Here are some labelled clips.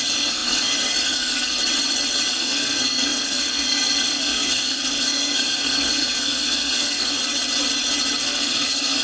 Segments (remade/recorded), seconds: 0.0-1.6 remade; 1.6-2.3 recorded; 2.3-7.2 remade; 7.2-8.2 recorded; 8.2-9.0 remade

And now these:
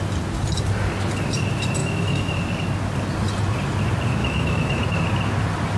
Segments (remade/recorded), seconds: 0.0-1.8 recorded; 1.8-2.4 remade; 2.4-4.2 recorded; 4.2-4.8 remade; 4.8-5.8 recorded